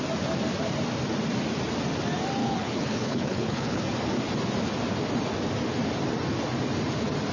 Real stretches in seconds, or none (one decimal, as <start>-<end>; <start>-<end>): 0.0-2.4; 3.8-7.3

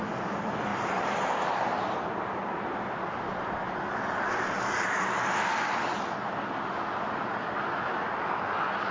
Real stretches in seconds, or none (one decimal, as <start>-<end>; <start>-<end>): 0.0-8.9

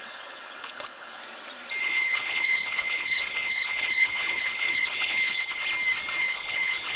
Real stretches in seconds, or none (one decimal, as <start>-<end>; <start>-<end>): 1.2-1.8; 5.6-6.2

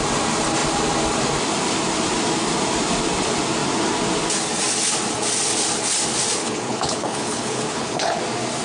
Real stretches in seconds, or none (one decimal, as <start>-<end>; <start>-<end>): 0.0-6.4; 8.2-8.6

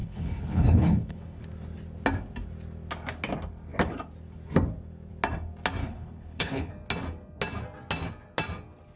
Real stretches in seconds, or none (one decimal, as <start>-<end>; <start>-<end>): 1.4-5.8; 6.7-9.0